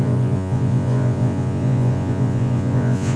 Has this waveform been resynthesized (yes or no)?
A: yes